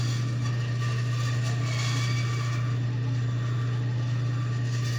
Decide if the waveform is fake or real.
real